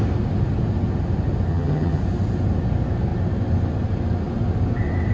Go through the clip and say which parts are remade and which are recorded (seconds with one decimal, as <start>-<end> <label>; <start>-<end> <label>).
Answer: 0.0-1.5 recorded; 1.5-2.0 remade; 2.0-5.1 recorded